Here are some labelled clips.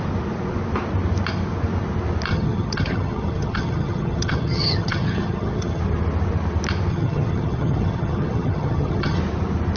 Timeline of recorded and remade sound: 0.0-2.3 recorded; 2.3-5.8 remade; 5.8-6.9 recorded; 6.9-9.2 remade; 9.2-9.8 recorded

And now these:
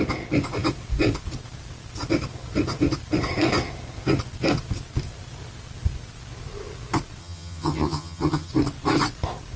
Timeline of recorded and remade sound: 0.0-7.2 recorded; 7.2-8.5 remade; 8.5-9.6 recorded